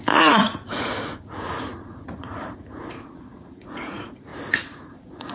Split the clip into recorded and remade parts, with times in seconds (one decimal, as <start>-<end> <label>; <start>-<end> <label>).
0.0-5.3 remade